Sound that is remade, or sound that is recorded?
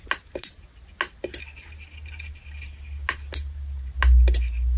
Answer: recorded